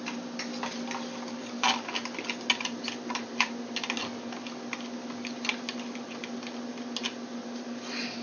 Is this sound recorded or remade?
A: recorded